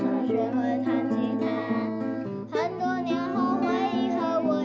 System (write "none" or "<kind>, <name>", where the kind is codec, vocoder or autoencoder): none